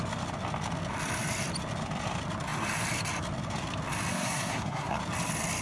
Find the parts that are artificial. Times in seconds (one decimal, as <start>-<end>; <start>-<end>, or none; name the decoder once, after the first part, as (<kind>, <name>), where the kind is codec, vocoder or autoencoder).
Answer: 4.1-5.0 (codec, SNAC)